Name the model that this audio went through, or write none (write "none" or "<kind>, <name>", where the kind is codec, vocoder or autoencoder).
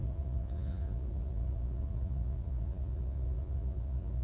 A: vocoder, Vocos